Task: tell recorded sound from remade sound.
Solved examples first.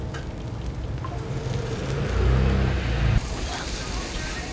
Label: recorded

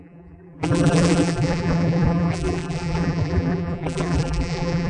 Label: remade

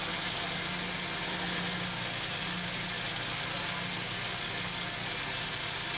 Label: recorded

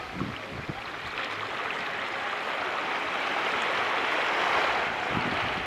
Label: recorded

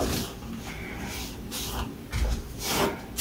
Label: recorded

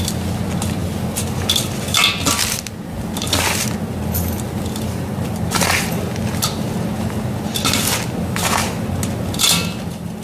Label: recorded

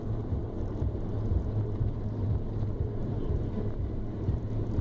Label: remade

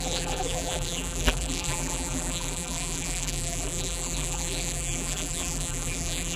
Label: remade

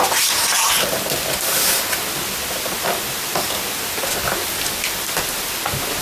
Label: recorded